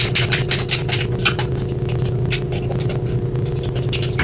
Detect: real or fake real